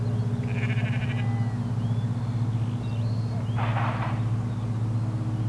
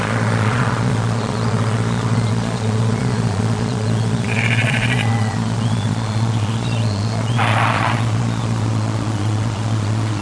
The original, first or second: first